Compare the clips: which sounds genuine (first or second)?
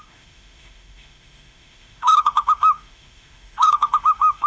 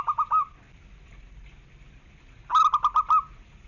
second